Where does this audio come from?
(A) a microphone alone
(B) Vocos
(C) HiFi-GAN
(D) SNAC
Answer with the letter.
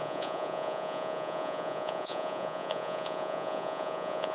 B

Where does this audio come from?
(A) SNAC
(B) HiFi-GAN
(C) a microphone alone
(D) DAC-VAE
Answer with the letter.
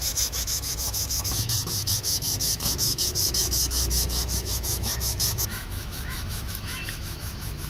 D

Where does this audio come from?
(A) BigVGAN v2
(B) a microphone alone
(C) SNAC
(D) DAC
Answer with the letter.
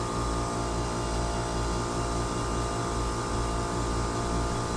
B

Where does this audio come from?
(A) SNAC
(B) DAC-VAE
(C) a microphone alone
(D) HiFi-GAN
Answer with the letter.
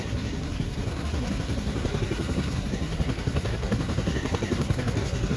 A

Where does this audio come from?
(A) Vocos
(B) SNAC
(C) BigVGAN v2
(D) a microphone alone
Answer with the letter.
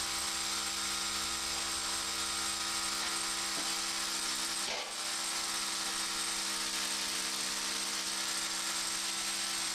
D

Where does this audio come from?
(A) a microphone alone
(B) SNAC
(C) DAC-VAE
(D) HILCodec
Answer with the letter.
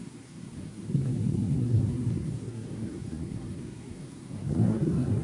B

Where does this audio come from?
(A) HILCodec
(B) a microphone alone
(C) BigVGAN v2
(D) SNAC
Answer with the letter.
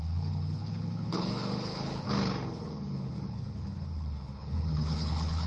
A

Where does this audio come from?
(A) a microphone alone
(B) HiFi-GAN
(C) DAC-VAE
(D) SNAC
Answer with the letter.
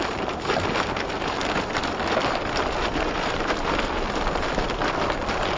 A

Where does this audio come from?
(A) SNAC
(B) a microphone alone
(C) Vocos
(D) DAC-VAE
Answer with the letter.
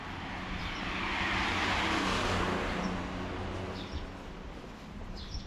B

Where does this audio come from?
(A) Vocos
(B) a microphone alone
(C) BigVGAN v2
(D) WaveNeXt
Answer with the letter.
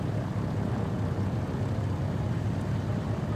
C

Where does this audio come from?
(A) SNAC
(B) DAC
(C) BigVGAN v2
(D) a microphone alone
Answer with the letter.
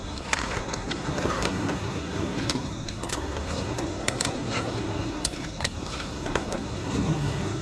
A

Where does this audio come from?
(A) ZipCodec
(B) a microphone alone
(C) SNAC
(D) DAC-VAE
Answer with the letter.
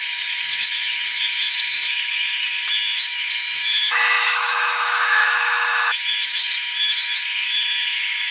D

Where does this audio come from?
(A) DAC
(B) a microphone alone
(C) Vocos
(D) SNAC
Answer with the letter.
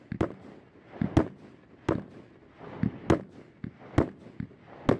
B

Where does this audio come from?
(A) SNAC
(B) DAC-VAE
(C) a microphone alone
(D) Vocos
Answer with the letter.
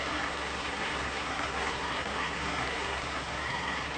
A